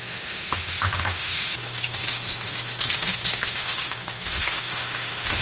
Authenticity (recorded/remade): remade